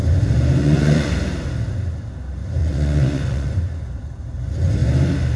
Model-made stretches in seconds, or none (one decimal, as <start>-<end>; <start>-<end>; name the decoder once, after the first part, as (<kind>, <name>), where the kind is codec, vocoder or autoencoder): 0.6-1.1 (vocoder, Vocos); 2.6-3.6